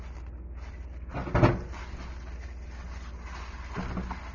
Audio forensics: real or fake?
real